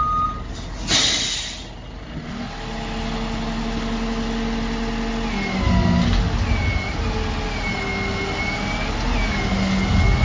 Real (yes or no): yes